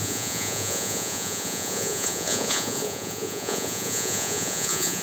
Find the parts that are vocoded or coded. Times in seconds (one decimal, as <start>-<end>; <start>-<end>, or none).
0.0-5.0